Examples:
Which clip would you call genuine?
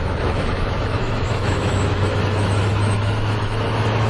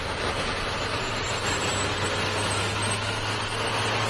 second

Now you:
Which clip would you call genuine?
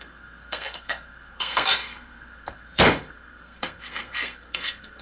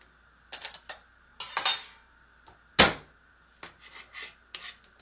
second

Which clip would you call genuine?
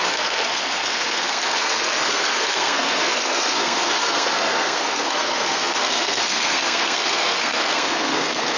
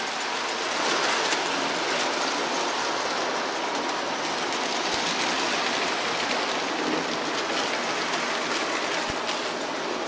second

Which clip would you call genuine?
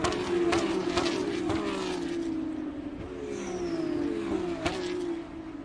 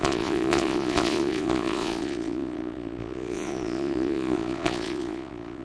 first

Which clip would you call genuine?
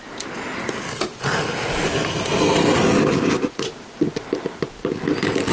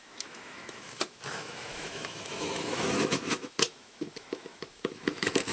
first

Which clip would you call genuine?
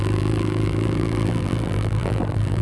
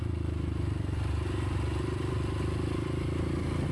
second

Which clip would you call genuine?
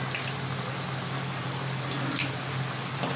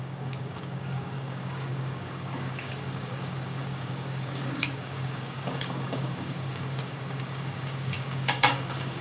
first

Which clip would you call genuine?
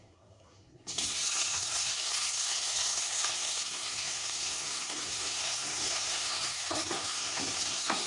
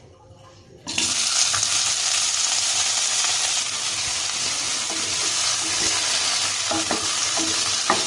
second